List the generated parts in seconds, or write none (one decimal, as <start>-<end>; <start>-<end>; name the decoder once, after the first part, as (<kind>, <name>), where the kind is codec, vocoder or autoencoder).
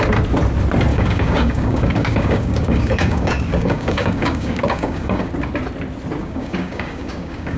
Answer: 0.9-5.3 (codec, DAC); 6.2-7.6